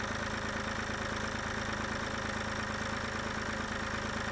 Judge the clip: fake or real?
real